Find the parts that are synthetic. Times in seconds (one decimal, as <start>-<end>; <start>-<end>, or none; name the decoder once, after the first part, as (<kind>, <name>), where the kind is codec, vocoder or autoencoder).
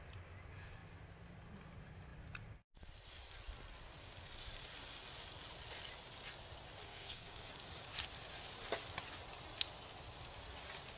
6.8-7.5 (codec, SNAC)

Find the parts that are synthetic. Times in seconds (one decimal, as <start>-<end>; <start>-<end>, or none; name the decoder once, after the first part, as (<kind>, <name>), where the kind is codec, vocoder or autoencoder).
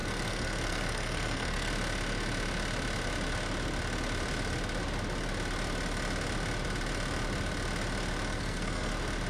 0.0-1.7 (codec, SNAC); 8.3-8.9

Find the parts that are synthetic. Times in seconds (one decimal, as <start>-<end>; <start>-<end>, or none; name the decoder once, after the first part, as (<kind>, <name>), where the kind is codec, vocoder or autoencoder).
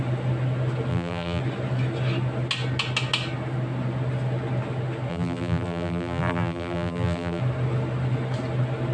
0.9-1.4 (vocoder, BigVGAN v2); 5.1-7.4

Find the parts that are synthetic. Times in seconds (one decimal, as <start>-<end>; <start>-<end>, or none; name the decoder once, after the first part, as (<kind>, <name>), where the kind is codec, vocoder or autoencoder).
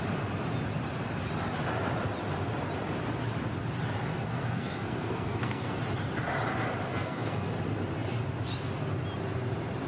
4.1-5.8 (codec, SNAC); 6.9-7.5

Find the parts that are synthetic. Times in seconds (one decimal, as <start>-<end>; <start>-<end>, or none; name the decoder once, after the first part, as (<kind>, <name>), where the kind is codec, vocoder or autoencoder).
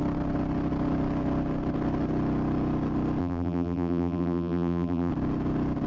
3.2-5.1 (vocoder, BigVGAN v2)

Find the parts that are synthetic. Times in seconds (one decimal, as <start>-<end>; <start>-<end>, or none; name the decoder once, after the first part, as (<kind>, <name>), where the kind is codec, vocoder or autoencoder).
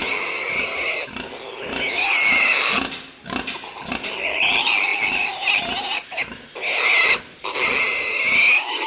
none